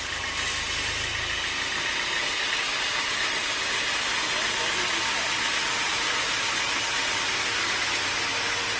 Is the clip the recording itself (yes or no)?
yes